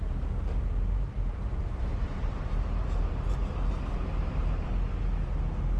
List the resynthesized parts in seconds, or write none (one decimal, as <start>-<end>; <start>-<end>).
1.2-4.7